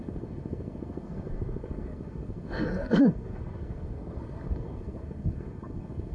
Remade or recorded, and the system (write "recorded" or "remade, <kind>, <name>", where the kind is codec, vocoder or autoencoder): remade, codec, SNAC